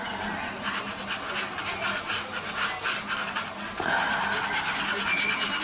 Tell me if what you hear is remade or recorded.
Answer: recorded